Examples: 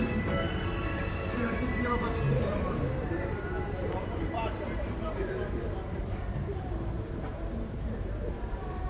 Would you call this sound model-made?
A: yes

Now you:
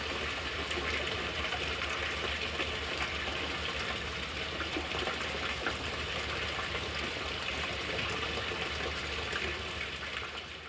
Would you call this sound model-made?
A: no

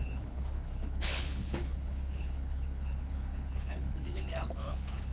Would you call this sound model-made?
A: yes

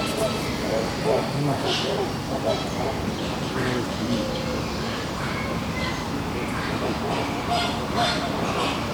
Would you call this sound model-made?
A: no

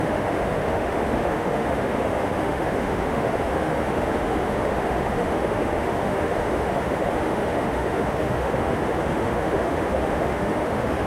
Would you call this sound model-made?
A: yes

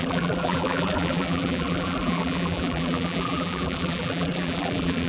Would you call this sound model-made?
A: yes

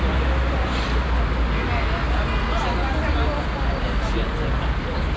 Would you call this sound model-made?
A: no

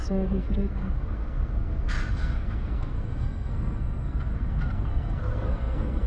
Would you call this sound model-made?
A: yes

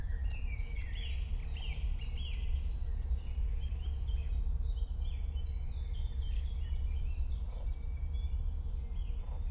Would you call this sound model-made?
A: no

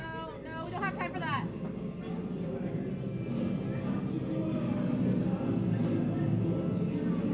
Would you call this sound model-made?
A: no